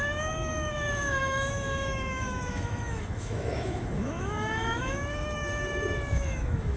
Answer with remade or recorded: remade